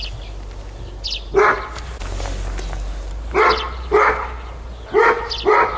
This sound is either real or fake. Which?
real